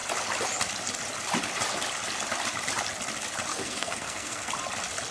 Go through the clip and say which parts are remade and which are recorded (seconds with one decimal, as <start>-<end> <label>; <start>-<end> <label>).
0.0-3.5 recorded; 3.5-4.5 remade; 4.5-5.1 recorded